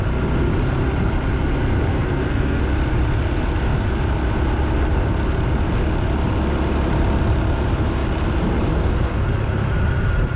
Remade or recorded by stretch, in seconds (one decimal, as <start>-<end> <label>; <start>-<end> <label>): 0.0-1.9 recorded; 1.9-2.6 remade; 2.6-10.4 recorded

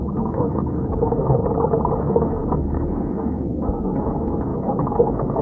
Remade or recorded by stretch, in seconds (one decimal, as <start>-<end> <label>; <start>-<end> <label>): 0.0-1.4 remade; 1.4-2.0 recorded; 2.0-5.4 remade

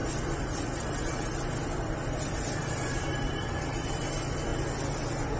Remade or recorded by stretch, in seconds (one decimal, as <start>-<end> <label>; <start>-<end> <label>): 0.0-4.5 remade; 4.5-5.4 recorded

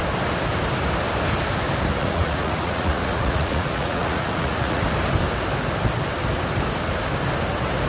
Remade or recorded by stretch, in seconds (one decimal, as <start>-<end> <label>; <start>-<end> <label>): 0.0-2.0 recorded; 2.0-4.8 remade; 4.8-7.9 recorded